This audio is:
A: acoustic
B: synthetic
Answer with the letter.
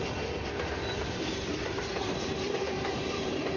A